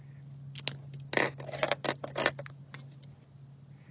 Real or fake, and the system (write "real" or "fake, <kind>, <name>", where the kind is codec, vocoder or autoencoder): real